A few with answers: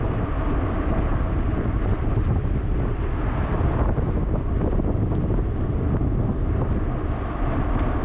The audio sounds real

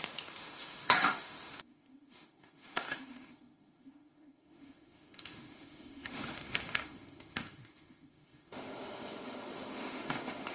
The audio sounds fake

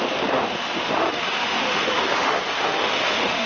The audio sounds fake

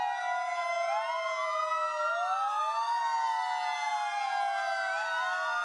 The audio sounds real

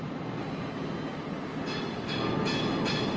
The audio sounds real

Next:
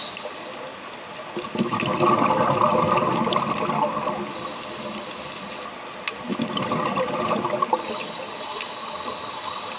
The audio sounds real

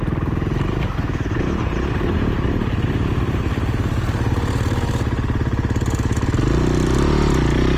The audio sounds real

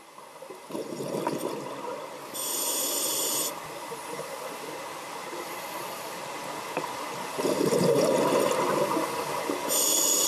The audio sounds real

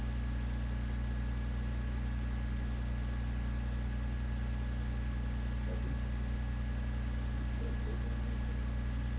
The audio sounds real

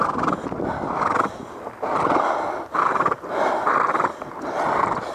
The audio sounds real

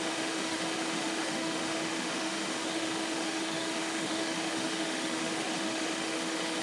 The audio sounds fake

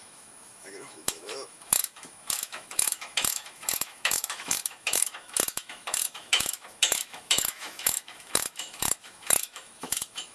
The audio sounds fake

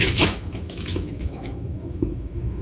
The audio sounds fake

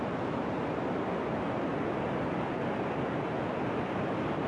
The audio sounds real